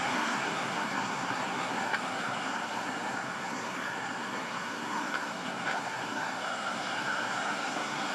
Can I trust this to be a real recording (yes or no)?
no